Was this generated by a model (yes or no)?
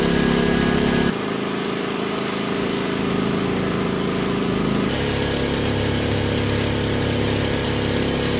no